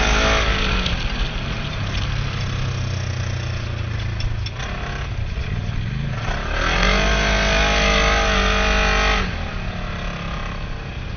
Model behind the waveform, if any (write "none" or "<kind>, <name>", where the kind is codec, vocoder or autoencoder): none